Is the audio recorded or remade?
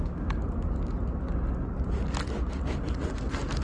recorded